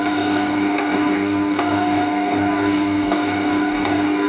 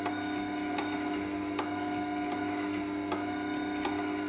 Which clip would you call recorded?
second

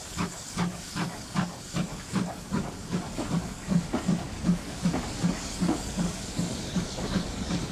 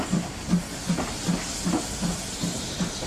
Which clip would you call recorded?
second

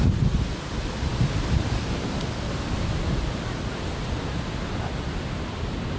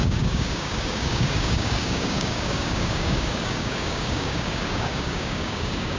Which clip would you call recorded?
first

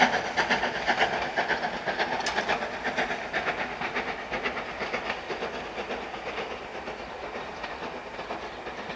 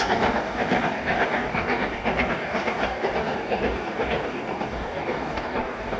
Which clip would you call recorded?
first